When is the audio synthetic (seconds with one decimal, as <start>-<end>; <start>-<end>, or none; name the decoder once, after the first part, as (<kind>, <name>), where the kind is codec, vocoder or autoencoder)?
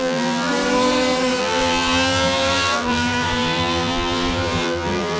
0.0-0.5 (vocoder, BigVGAN v2); 1.4-5.2